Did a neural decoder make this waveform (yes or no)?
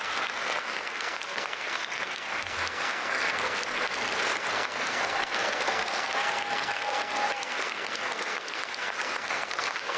yes